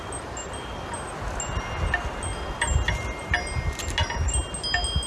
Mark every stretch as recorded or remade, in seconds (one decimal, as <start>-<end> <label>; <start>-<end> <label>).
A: 0.0-5.1 recorded